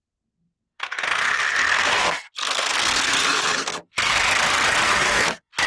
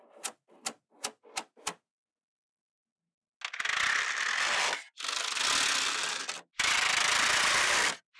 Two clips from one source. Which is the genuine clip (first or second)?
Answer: second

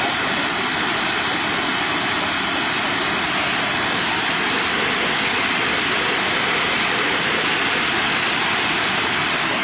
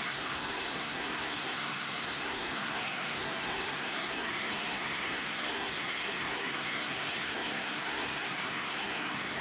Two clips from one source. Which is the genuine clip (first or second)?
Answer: first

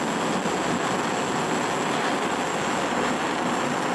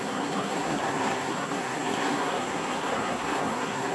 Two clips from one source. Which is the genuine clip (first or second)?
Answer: first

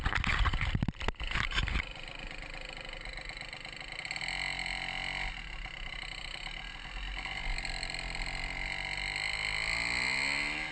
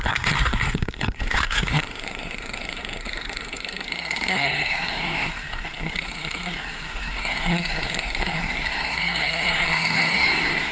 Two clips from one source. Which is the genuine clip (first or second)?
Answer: first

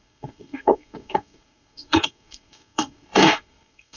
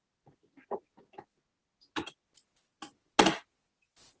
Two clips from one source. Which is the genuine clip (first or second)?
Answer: second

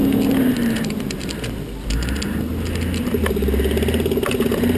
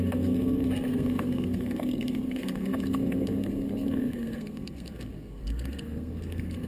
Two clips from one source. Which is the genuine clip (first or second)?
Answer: first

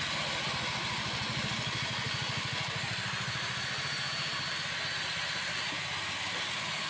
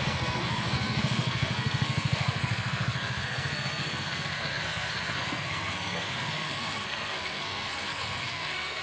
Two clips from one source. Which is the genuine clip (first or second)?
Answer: first